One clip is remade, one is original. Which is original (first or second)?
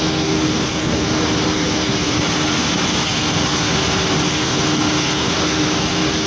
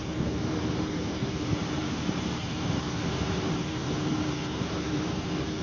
first